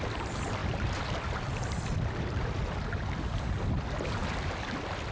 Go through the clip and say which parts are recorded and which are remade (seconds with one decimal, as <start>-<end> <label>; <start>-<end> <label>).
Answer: 0.0-5.1 recorded